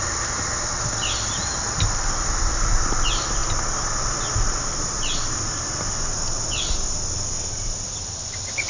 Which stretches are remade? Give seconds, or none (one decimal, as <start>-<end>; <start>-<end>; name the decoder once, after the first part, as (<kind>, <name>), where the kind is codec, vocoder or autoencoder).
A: none

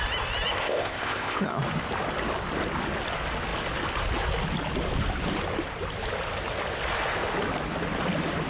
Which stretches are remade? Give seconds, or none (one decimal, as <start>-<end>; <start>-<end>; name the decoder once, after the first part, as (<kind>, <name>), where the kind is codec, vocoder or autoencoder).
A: 0.6-1.5 (codec, ZipCodec)

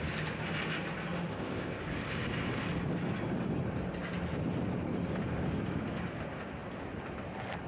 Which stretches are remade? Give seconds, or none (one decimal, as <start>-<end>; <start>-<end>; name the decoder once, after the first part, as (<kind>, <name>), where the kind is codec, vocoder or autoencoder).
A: 1.3-1.8 (codec, ZipCodec)

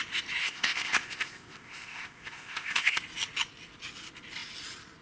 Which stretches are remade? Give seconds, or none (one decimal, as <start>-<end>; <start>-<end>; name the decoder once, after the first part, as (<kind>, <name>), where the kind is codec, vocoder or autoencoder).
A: 0.4-3.0 (codec, ZipCodec)

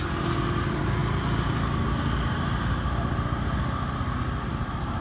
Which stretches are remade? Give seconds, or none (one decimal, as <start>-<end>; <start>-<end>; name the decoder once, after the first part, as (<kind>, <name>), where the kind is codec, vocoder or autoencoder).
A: none

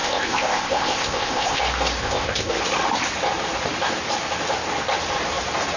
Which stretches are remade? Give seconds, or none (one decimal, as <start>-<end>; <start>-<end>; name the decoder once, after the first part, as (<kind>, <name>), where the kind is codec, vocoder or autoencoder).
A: 0.0-1.6 (codec, ZipCodec); 2.0-2.5

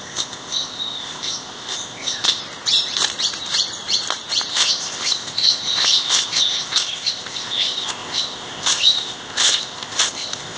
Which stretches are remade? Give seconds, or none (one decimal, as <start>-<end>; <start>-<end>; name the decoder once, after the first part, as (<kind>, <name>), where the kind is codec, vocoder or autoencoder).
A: 0.0-2.4 (codec, ZipCodec); 4.5-10.6